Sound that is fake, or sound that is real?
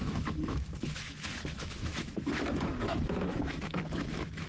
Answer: fake